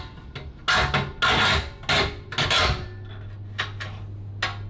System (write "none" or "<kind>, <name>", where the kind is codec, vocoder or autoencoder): none